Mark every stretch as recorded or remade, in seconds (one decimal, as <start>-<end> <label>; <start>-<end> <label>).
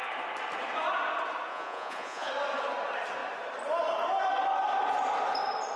0.0-1.5 recorded; 1.5-2.3 remade; 2.3-5.8 recorded